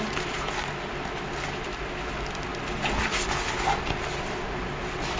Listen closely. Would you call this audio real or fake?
real